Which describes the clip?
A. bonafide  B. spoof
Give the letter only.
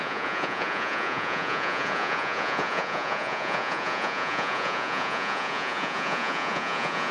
B